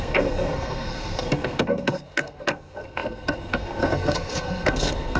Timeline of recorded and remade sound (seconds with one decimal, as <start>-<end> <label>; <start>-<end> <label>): 0.0-5.2 remade

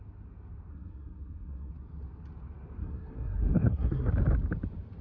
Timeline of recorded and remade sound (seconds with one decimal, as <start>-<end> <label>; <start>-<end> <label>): 0.0-0.7 recorded; 0.7-1.7 remade; 1.7-2.8 recorded; 2.8-4.1 remade; 4.1-5.0 recorded

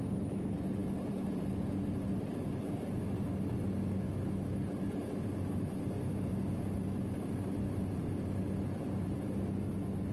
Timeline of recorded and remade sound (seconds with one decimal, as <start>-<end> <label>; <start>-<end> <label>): 0.0-10.1 recorded